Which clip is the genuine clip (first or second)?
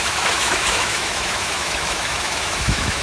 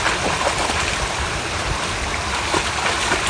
second